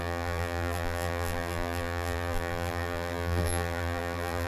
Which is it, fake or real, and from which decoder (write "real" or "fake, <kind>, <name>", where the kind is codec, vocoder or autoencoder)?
fake, vocoder, BigVGAN v2